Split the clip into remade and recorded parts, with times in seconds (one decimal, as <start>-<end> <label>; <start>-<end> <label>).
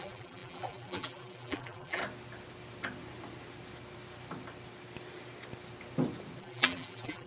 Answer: 0.0-2.0 remade; 2.0-6.4 recorded; 6.4-7.3 remade